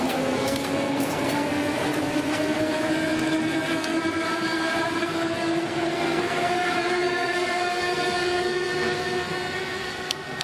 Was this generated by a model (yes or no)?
yes